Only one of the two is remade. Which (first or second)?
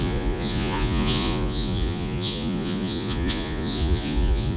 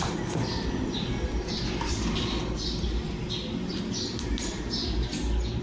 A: first